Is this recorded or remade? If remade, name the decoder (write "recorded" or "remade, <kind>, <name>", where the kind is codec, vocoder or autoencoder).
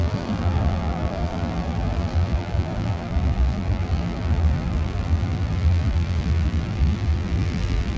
remade, vocoder, BigVGAN v2